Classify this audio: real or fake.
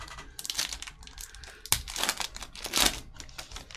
real